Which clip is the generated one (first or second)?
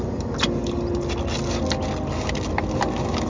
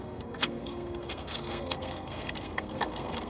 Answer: second